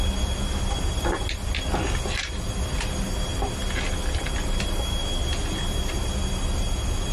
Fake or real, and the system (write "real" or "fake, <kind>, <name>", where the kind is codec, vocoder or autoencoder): real